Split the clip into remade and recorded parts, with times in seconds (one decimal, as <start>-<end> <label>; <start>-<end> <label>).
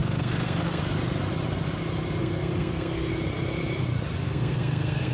0.0-0.8 remade; 0.8-2.2 recorded; 2.2-3.1 remade; 3.1-4.2 recorded; 4.2-5.1 remade